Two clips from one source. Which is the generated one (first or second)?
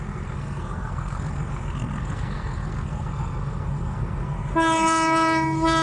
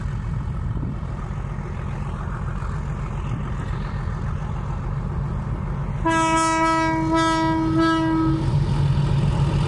first